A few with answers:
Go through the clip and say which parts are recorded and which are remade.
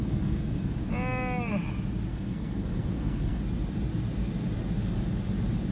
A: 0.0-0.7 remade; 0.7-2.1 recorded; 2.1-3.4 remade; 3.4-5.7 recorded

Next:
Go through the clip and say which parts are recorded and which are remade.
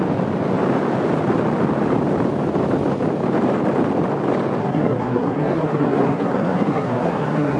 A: 0.0-4.6 recorded; 4.6-7.6 remade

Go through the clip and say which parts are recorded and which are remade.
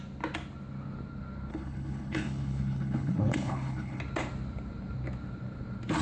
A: 0.0-1.5 recorded; 1.5-4.0 remade; 4.0-6.0 recorded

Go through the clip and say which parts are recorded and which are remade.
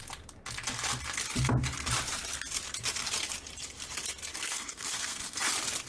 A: 0.0-4.4 recorded; 4.4-5.4 remade; 5.4-5.9 recorded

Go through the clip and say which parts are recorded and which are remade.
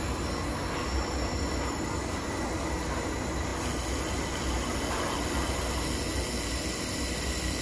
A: 0.0-7.6 recorded